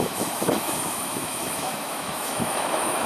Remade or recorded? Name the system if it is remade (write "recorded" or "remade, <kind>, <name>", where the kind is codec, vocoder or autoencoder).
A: remade, autoencoder, DAC-VAE